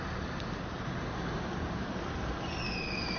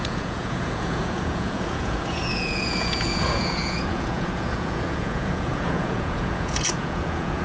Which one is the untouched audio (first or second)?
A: first